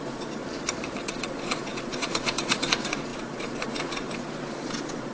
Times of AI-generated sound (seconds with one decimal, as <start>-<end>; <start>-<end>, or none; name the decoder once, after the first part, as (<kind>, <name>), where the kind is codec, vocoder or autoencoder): 0.0-0.4 (vocoder, Vocos); 1.0-5.1